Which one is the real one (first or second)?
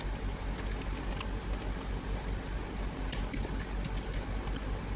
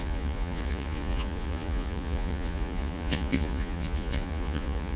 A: first